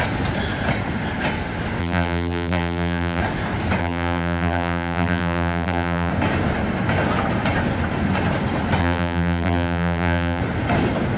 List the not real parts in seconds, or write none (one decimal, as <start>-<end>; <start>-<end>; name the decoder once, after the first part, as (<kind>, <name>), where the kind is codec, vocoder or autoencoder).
1.8-3.2 (vocoder, BigVGAN v2); 3.8-6.1; 8.8-10.4